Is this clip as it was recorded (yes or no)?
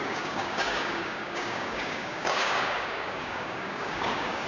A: no